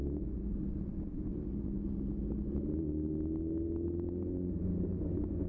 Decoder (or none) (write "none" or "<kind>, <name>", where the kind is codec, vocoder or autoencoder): none